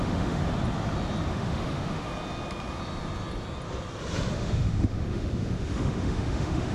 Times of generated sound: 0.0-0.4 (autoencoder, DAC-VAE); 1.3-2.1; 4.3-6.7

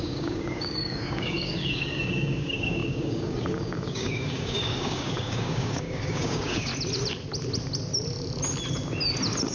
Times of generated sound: 0.0-6.7 (codec, DAC)